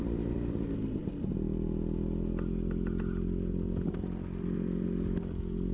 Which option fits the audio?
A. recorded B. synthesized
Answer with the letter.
A